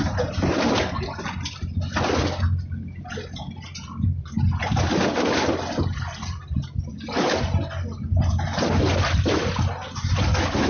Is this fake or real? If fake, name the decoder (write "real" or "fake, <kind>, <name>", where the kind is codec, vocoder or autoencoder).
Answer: real